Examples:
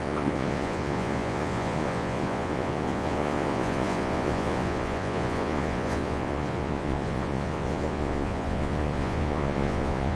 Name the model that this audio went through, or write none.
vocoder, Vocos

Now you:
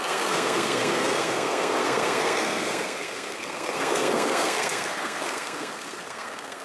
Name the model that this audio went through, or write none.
codec, SNAC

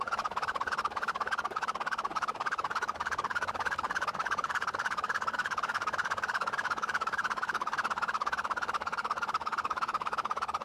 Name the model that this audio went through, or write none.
codec, DAC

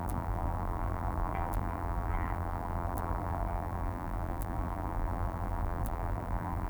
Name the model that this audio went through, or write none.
vocoder, BigVGAN v2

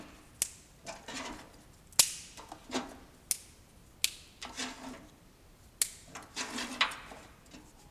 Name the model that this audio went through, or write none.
none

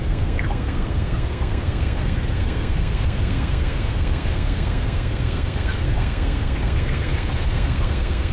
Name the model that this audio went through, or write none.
codec, SNAC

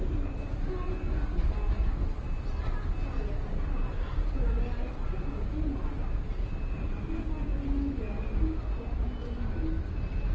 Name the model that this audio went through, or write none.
none